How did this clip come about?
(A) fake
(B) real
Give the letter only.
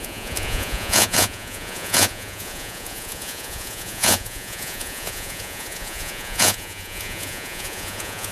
A